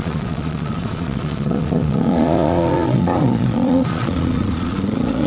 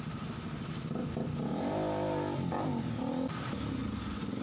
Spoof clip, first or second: first